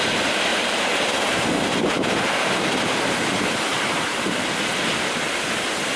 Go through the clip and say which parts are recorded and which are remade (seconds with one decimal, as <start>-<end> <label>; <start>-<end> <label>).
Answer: 0.0-0.5 recorded; 0.5-3.0 remade; 3.0-3.7 recorded; 3.7-4.5 remade; 4.5-6.0 recorded